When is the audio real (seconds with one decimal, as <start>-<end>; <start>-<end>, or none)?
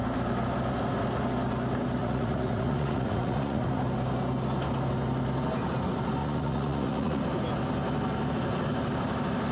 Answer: 0.0-2.0; 3.8-6.2; 7.2-9.5